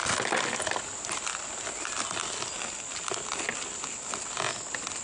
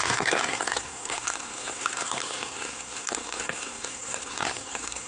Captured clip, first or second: first